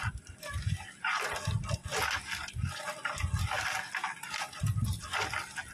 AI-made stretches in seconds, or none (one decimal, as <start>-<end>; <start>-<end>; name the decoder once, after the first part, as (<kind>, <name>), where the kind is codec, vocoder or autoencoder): none

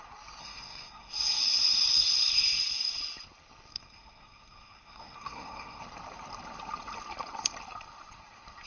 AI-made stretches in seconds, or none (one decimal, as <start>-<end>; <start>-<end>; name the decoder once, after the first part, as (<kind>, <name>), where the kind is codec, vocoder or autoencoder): 0.4-1.4 (codec, SNAC); 3.7-5.8

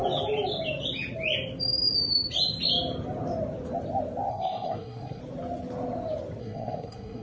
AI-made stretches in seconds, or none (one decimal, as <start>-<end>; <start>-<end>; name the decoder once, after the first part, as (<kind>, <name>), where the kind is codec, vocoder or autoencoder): 4.3-5.2 (codec, SNAC); 6.4-7.2

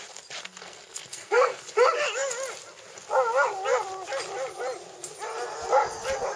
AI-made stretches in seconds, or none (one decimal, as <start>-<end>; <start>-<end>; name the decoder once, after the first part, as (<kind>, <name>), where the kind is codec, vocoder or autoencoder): 0.4-1.6 (codec, SNAC)